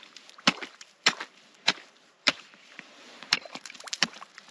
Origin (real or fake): fake